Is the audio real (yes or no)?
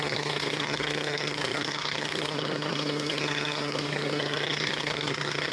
no